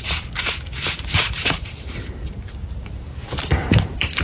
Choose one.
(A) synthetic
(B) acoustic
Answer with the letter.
A